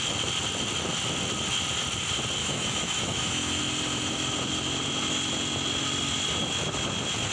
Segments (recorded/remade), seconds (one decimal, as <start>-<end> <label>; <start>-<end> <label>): 0.0-2.4 recorded; 2.4-3.6 remade; 3.6-7.3 recorded

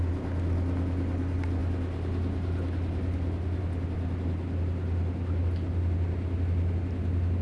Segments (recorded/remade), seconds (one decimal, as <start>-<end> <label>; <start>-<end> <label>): 0.0-7.4 recorded

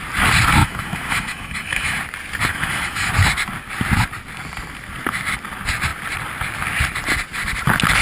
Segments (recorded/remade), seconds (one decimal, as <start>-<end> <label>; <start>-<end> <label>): 0.0-0.6 recorded; 0.6-2.0 remade; 2.0-2.5 recorded; 2.5-3.1 remade; 3.1-8.0 recorded

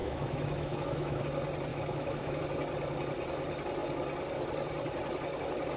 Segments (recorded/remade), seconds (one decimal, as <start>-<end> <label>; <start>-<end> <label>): 0.0-1.2 remade; 1.2-1.7 recorded; 1.7-2.4 remade; 2.4-5.8 recorded

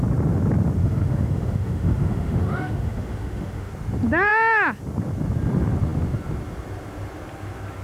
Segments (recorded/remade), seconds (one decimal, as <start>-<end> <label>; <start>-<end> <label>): 0.0-0.8 recorded; 0.8-3.7 remade; 3.7-7.8 recorded